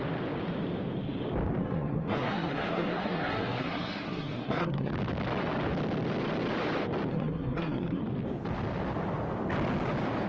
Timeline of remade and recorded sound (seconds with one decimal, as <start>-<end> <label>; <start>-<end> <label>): 0.0-1.6 recorded; 1.6-4.9 remade; 4.9-7.1 recorded; 7.1-8.0 remade; 8.0-10.3 recorded